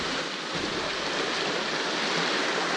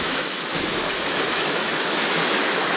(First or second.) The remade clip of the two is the second